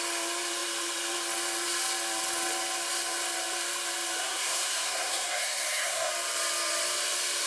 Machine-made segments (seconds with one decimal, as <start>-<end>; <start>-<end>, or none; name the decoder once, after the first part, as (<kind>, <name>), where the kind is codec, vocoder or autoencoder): 4.2-6.1 (codec, SNAC)